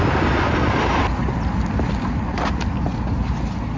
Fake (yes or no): no